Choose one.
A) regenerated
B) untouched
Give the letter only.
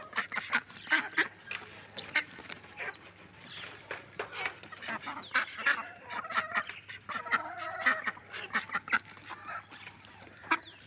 B